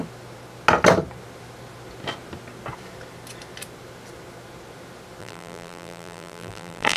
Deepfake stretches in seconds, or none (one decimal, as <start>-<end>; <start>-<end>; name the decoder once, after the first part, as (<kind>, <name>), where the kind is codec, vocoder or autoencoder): 5.2-7.0 (vocoder, BigVGAN v2)